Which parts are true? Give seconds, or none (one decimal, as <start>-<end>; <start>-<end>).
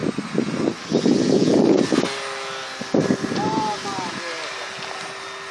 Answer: 0.0-5.5